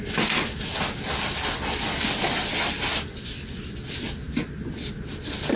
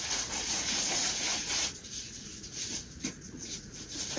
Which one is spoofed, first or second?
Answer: second